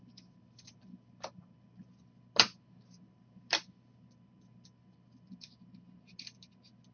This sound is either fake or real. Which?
real